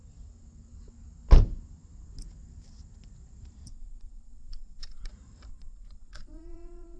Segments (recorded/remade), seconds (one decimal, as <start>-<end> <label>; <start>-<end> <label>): 0.0-3.7 recorded; 3.7-5.1 remade; 5.1-5.5 recorded; 5.5-7.0 remade